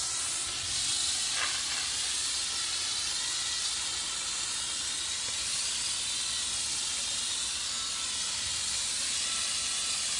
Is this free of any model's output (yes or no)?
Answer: yes